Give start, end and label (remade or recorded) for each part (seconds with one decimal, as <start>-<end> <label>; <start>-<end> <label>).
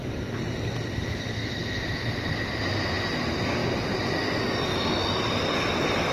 0.0-6.1 recorded